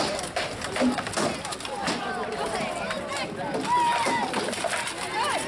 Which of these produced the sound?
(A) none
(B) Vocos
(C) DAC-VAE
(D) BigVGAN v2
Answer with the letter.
A